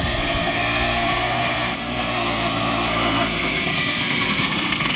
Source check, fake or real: fake